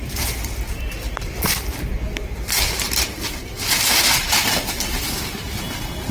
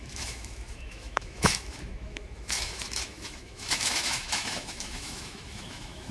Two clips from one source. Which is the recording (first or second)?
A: first